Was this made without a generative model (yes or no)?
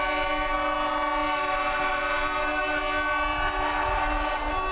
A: yes